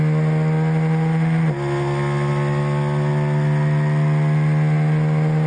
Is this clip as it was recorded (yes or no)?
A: yes